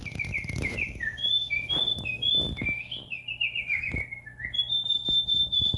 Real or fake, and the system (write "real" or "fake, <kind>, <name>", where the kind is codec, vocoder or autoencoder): real